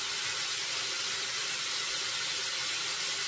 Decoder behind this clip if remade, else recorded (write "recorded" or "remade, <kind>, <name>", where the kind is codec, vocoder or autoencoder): recorded